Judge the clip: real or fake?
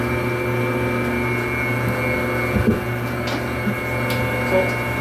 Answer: real